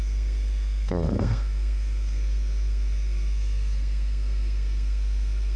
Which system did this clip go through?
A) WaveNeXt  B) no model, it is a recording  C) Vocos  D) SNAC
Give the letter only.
D